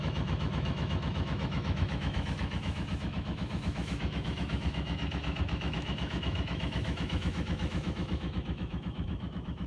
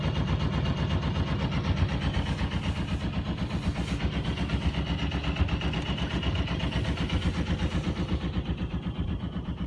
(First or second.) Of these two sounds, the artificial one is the first